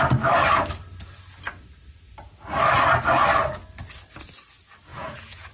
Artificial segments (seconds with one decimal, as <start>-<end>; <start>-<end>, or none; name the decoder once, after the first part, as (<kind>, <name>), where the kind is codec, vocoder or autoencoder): 4.9-5.5 (vocoder, Vocos)